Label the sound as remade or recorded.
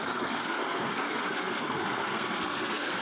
remade